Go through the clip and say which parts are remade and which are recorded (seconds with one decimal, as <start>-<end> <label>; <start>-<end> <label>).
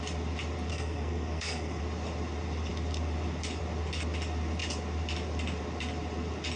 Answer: 0.0-0.7 recorded; 0.7-1.8 remade; 1.8-6.6 recorded